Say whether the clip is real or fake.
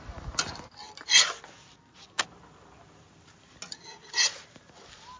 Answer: real